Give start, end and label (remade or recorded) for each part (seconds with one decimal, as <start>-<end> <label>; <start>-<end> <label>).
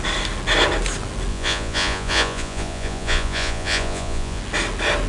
0.0-1.3 recorded; 1.3-4.4 remade; 4.4-5.1 recorded